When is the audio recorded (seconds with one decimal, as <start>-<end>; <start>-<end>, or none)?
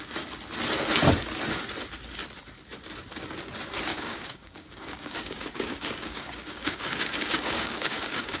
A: 0.0-3.9